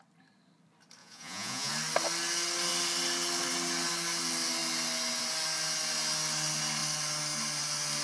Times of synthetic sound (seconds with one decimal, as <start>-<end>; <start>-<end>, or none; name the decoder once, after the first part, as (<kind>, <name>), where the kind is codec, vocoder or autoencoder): 1.0-1.7 (vocoder, Vocos)